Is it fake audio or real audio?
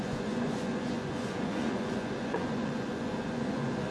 fake